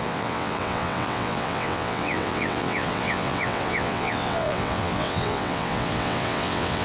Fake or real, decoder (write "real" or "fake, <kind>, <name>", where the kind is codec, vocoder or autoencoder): fake, vocoder, WaveNeXt